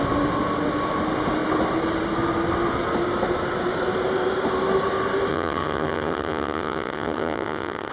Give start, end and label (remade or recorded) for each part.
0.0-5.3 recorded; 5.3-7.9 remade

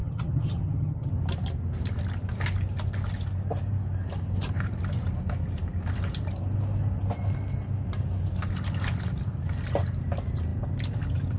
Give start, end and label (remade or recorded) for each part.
0.0-1.1 remade; 1.1-11.4 recorded

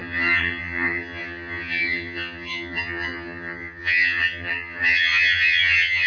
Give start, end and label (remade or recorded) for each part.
0.0-6.1 remade